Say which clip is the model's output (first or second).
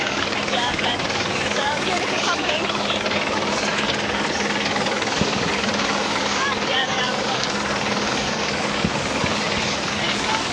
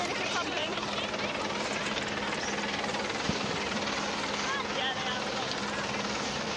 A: first